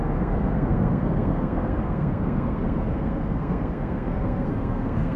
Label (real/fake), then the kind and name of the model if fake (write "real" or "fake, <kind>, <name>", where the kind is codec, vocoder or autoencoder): fake, codec, SNAC